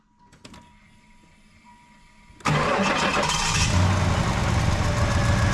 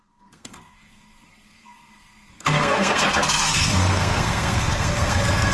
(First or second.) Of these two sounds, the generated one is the second